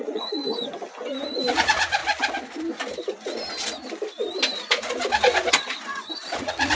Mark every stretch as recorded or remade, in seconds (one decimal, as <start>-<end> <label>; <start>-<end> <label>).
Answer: 0.0-0.4 remade; 0.4-1.5 recorded; 1.5-2.0 remade; 2.0-5.5 recorded; 5.5-6.7 remade